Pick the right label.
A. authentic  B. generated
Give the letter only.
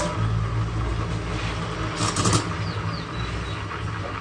A